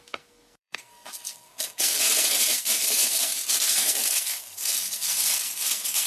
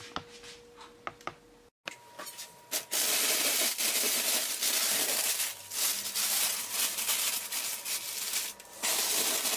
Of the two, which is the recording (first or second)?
second